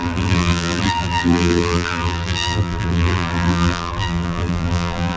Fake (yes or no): yes